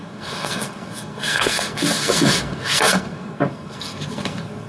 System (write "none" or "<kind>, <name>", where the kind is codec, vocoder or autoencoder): codec, SNAC